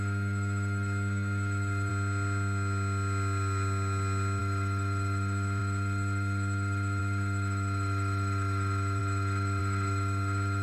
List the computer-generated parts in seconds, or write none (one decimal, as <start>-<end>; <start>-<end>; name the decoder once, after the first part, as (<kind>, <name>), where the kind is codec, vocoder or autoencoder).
0.0-1.9 (autoencoder, DAC-VAE); 4.4-10.6